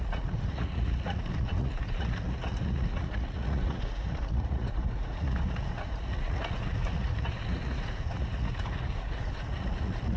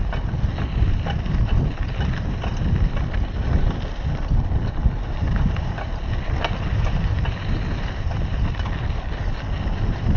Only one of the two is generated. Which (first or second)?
first